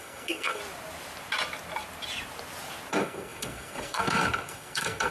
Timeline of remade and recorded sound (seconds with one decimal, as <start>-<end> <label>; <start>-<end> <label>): 0.0-0.6 remade; 0.6-2.9 recorded; 2.9-5.1 remade

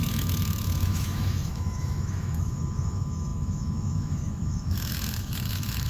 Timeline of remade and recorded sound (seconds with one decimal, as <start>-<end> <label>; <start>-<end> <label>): 0.0-5.9 remade

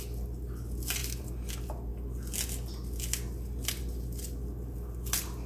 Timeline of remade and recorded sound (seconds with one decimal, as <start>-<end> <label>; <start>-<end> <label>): 0.0-5.5 recorded

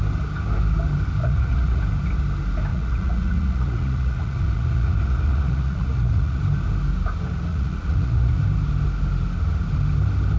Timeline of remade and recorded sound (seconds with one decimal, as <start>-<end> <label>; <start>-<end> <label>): 0.0-1.2 recorded; 1.2-1.8 remade; 1.8-2.7 recorded; 2.7-6.4 remade; 6.4-7.5 recorded; 7.5-8.4 remade; 8.4-10.4 recorded

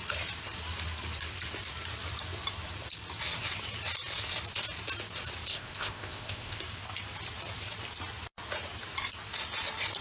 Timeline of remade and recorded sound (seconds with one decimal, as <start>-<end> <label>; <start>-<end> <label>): 0.0-5.5 recorded; 5.5-6.6 remade; 6.6-10.0 recorded

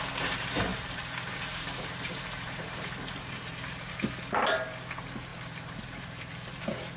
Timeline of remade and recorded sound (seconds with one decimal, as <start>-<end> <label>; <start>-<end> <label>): 0.0-0.7 recorded; 0.7-3.9 remade; 3.9-5.3 recorded; 5.3-6.6 remade; 6.6-7.0 recorded